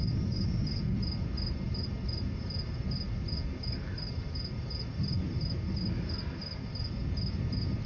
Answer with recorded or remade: recorded